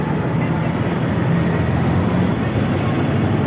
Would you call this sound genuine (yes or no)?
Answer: yes